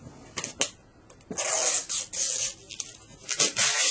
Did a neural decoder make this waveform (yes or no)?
no